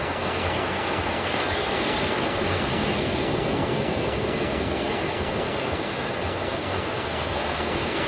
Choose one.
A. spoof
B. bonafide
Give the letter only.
A